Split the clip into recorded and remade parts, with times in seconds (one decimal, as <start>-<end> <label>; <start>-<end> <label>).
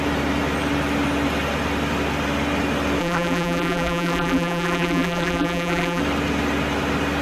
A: 0.0-3.0 recorded; 3.0-6.0 remade; 6.0-7.2 recorded